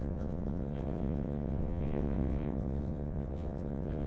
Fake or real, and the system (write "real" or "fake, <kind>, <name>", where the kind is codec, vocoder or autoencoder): fake, vocoder, WaveNeXt